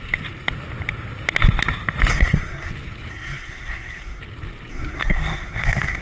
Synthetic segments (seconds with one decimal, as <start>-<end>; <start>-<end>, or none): 2.1-2.7; 3.1-4.2; 4.7-6.0